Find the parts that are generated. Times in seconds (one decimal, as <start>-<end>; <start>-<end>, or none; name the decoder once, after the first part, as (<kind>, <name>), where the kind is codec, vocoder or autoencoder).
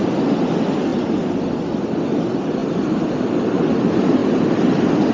none